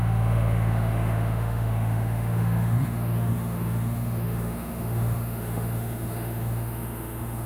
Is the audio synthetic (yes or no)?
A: yes